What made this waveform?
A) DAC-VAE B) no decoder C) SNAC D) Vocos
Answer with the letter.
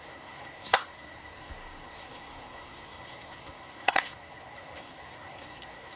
C